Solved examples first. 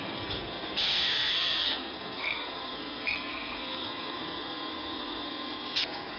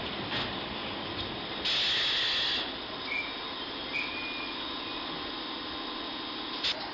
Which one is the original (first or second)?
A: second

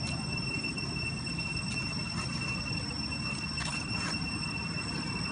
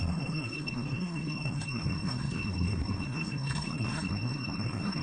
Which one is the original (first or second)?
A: first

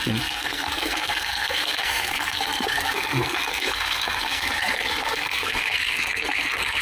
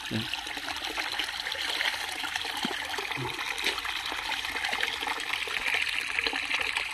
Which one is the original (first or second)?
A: second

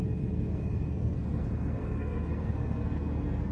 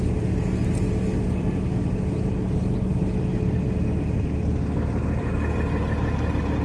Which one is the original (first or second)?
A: second